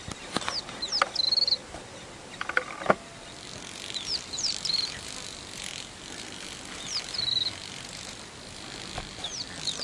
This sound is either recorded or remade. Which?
recorded